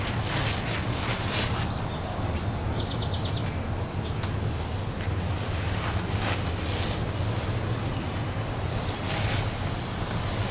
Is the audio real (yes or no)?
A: yes